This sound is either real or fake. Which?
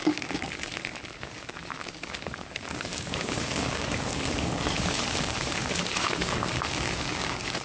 fake